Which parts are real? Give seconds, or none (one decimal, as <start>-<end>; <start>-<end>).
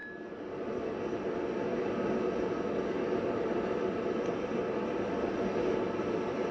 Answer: 0.0-6.5